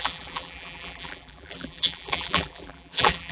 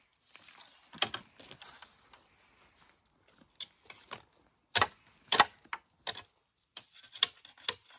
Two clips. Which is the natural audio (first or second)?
second